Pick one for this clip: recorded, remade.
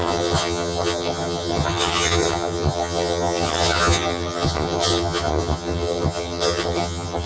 remade